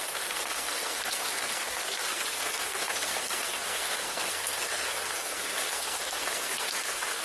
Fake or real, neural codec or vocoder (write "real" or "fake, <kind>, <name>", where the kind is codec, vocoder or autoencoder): fake, codec, SNAC